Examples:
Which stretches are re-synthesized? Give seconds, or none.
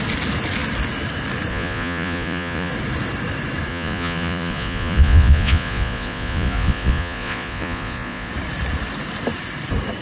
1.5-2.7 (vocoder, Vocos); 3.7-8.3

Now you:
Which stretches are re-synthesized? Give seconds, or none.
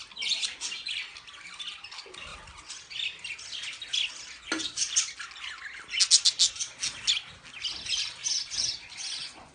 8.2-9.5 (vocoder, Vocos)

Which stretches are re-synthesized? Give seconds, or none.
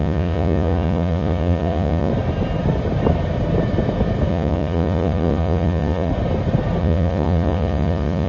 0.0-2.1 (vocoder, Vocos); 4.3-6.1; 6.8-8.3